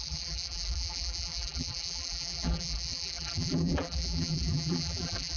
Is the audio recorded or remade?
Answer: remade